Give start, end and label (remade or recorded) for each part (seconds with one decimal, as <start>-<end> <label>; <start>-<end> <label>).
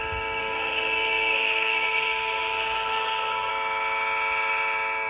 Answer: 0.0-0.4 recorded; 0.4-3.5 remade; 3.5-5.1 recorded